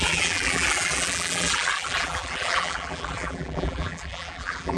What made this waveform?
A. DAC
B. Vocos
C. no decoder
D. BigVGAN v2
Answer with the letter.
D